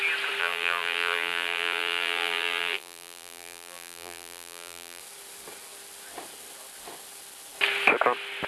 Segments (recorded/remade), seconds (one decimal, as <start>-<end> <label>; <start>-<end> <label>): 0.0-0.4 recorded; 0.4-5.0 remade; 5.0-8.5 recorded